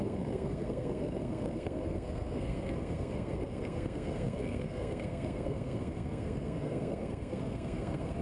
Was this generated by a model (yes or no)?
yes